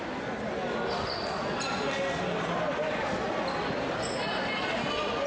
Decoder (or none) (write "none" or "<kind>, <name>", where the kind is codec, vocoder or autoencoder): none